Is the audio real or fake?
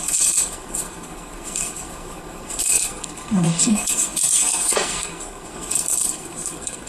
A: fake